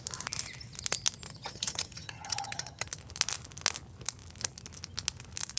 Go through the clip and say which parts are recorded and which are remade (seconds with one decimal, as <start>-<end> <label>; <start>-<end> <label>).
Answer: 0.0-1.3 recorded; 1.3-2.9 remade; 2.9-5.6 recorded